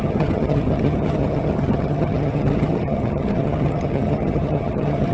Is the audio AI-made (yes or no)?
yes